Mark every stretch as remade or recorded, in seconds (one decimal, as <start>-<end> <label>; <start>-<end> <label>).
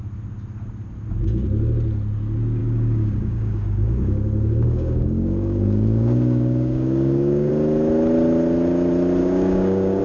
0.0-2.6 recorded; 2.6-7.5 remade; 7.5-9.2 recorded; 9.2-10.0 remade